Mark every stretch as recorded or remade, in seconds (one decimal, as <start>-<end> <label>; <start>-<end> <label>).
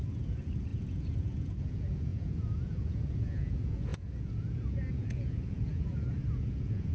0.0-6.9 remade